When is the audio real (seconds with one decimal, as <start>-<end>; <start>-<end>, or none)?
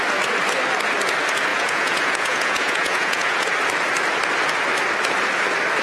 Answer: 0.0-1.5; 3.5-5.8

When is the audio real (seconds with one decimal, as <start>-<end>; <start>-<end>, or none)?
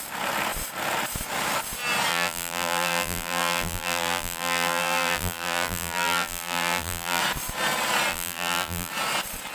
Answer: 0.0-2.1; 7.2-8.1; 8.9-9.5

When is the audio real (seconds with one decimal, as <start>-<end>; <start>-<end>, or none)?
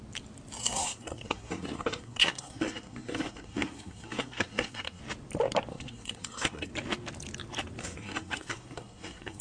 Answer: 0.0-0.6; 5.0-5.7; 6.7-7.8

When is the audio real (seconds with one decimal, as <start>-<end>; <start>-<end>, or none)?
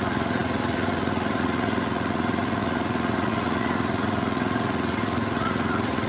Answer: none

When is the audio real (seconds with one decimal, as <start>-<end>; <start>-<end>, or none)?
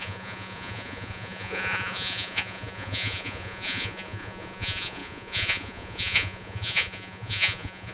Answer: none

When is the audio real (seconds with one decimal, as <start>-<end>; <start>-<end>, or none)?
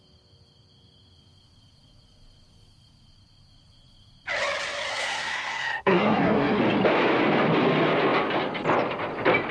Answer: 0.0-4.9; 6.6-9.5